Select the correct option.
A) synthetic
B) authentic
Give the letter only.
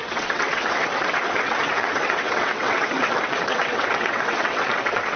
A